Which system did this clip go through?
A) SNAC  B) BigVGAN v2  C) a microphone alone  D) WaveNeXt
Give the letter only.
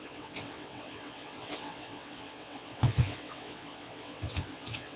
D